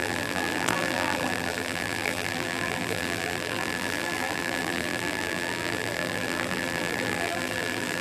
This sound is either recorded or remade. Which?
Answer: remade